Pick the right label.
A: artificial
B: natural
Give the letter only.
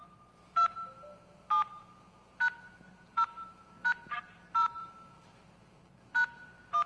A